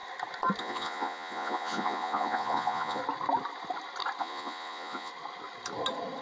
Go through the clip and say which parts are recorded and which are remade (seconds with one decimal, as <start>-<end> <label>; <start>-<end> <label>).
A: 0.0-0.6 recorded; 0.6-3.0 remade; 3.0-4.2 recorded; 4.2-5.1 remade; 5.1-6.2 recorded